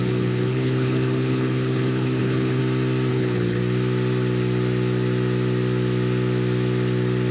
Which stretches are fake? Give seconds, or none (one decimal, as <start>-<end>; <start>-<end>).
0.0-2.6; 3.1-3.6